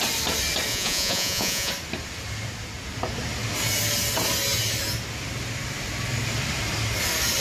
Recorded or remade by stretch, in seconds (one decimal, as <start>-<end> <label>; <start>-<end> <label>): 0.0-0.7 recorded; 0.7-1.7 remade; 1.7-7.4 recorded